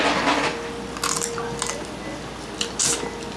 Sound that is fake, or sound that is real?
real